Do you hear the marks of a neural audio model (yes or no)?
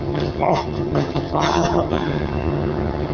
yes